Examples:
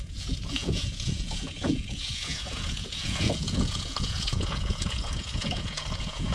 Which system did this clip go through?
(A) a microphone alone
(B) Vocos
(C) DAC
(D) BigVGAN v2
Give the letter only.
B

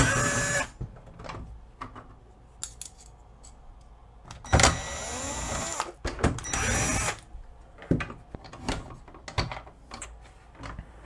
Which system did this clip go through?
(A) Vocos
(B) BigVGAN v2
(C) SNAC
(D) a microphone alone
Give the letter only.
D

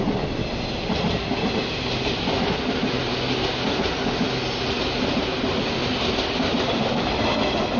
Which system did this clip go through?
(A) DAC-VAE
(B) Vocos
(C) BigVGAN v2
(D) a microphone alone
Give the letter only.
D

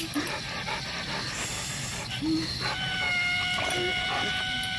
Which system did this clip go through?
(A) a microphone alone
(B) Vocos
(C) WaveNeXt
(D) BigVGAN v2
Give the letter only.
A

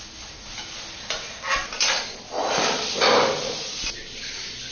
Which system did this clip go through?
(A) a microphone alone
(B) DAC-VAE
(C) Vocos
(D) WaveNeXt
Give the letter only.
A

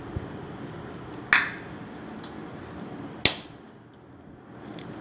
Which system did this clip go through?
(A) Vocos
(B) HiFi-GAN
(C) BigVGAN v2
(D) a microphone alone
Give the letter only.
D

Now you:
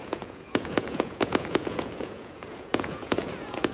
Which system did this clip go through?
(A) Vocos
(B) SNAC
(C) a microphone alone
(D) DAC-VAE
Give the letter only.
A